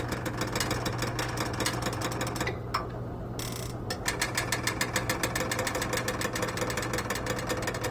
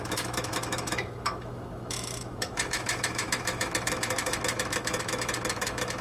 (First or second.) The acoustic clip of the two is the first